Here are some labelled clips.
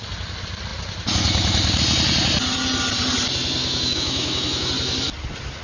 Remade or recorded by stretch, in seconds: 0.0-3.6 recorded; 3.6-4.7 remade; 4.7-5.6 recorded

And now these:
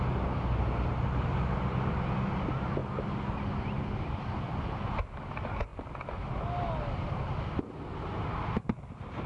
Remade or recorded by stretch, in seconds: 0.0-9.3 recorded

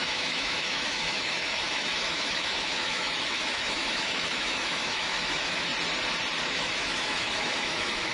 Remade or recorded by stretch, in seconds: 0.0-5.7 remade; 5.7-6.4 recorded; 6.4-8.1 remade

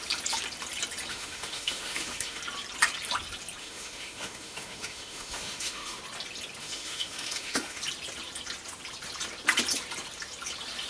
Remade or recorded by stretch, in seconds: 0.0-1.1 recorded; 1.1-2.4 remade; 2.4-3.6 recorded; 3.6-6.0 remade; 6.0-6.6 recorded; 6.6-7.8 remade; 7.8-10.9 recorded

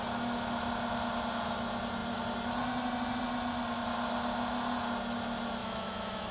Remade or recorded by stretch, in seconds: 0.0-5.6 recorded; 5.6-6.3 remade

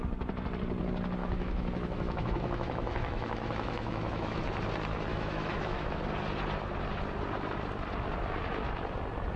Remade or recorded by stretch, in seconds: 0.0-1.2 recorded; 1.2-4.4 remade; 4.4-5.1 recorded; 5.1-6.0 remade; 6.0-9.4 recorded